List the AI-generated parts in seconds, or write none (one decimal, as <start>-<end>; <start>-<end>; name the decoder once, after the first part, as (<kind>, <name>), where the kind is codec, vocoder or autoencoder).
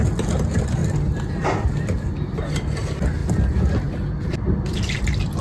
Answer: none